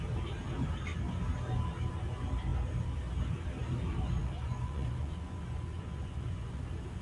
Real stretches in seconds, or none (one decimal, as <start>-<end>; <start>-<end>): 0.0-4.2; 6.6-7.0